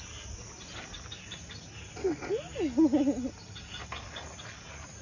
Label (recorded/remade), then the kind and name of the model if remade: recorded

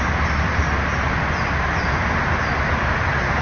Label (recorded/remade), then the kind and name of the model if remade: recorded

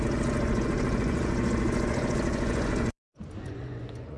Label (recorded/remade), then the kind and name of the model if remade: remade, vocoder, Vocos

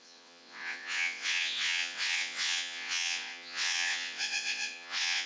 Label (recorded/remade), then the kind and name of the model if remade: remade, vocoder, WaveNeXt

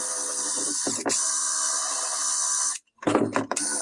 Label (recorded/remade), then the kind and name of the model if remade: recorded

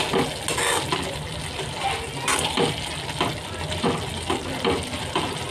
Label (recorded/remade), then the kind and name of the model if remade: recorded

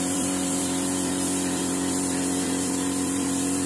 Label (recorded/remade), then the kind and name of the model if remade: remade, vocoder, BigVGAN v2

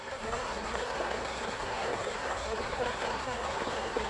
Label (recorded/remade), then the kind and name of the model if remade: remade, codec, SNAC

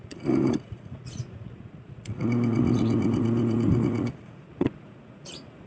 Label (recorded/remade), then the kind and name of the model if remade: remade, vocoder, Vocos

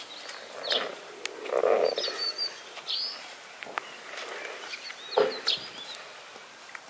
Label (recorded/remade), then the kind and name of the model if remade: recorded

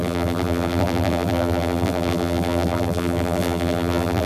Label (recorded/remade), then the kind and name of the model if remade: remade, vocoder, BigVGAN v2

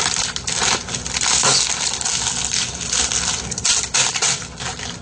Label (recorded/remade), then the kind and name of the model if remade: recorded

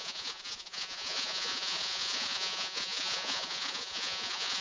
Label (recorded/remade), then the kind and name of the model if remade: remade, vocoder, Vocos